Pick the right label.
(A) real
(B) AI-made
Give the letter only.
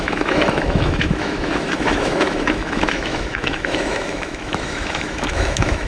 B